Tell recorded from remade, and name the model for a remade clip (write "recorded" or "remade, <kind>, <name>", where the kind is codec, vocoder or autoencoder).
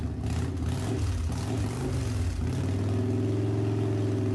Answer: recorded